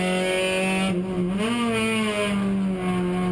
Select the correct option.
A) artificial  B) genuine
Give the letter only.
B